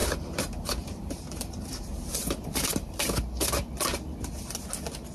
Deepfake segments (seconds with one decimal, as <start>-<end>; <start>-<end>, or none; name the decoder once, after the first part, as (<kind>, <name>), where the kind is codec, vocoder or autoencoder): 0.0-3.0 (vocoder, BigVGAN v2)